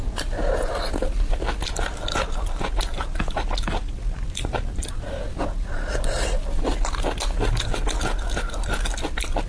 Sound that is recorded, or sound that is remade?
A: recorded